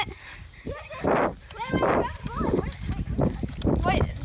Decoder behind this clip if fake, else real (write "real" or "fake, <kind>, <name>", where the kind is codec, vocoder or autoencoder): real